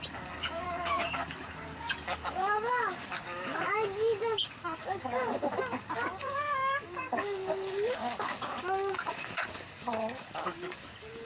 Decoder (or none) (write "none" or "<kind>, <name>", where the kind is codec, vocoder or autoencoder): codec, DAC